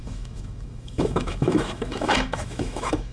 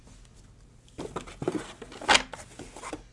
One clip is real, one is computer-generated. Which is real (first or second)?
second